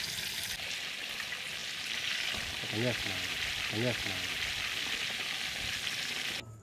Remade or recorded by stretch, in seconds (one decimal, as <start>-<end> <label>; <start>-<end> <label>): 0.0-6.6 recorded